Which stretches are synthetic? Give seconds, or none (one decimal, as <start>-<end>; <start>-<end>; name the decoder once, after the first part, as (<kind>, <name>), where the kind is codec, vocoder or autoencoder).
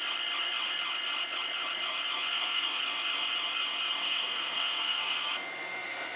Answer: 2.3-2.8 (codec, SNAC); 4.0-5.3